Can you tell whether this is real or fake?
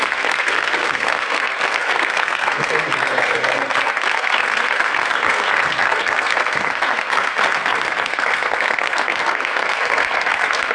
fake